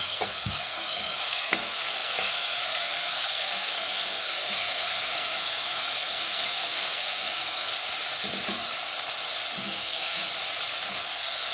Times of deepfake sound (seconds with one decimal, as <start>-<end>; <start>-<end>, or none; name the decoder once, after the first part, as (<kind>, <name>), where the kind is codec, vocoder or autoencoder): 0.0-7.7 (codec, SNAC); 9.6-10.3; 10.9-11.5

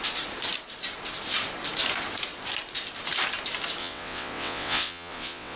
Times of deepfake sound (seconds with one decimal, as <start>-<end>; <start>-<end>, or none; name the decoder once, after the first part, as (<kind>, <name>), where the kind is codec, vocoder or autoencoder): 3.8-5.6 (vocoder, WaveNeXt)

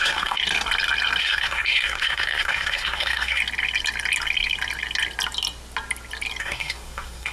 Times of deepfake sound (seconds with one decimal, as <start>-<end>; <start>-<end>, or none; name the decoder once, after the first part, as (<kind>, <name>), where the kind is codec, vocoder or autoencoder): 0.0-0.4 (codec, SNAC); 1.2-3.4; 6.4-7.3